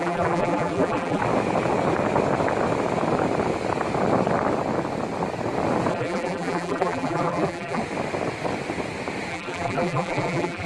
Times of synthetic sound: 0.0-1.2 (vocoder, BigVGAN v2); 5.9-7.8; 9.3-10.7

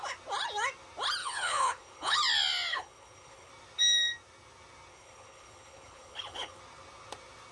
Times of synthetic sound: 1.2-2.2 (codec, HILCodec); 2.7-3.5; 4.9-6.6

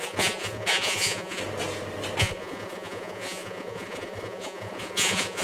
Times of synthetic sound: 0.0-1.4 (vocoder, Vocos); 2.2-5.4